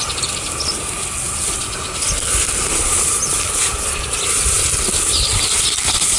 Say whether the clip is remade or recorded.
recorded